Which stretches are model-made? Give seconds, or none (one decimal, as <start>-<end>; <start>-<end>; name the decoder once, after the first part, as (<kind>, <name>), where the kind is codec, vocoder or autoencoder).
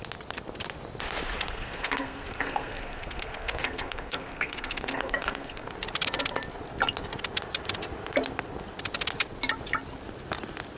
1.5-5.7 (codec, SNAC)